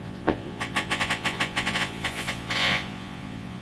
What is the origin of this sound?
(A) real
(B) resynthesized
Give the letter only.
B